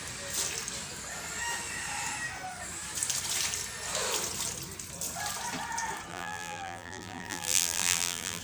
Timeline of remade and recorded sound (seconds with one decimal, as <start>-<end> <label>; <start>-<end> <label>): 0.0-6.1 recorded; 6.1-8.4 remade